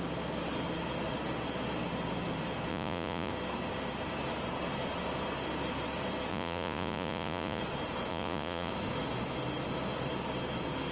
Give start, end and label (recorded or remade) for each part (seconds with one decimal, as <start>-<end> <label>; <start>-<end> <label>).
0.0-2.7 recorded; 2.7-3.3 remade; 3.3-6.3 recorded; 6.3-7.6 remade; 7.6-8.1 recorded; 8.1-8.7 remade; 8.7-10.9 recorded